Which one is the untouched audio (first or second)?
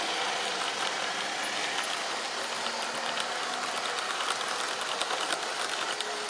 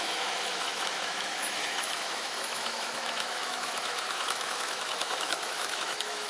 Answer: first